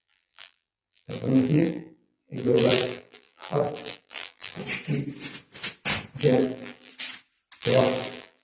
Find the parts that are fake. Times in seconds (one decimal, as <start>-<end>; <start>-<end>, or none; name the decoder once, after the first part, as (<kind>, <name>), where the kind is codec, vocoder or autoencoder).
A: 0.0-4.6 (vocoder, BigVGAN v2); 6.2-6.9; 7.6-8.4